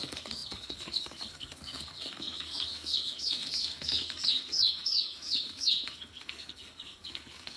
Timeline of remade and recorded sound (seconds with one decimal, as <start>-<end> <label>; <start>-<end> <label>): 0.0-7.6 remade